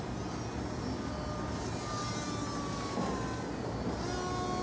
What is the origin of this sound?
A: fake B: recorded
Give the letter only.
B